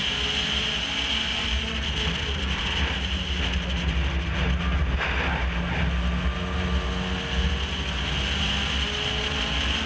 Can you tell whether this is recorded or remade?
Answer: recorded